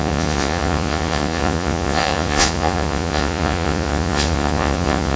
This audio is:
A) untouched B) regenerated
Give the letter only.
B